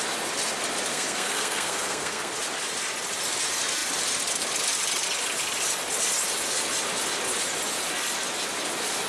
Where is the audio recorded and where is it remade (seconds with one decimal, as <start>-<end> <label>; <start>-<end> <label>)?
0.0-0.9 recorded; 0.9-2.3 remade; 2.3-9.1 recorded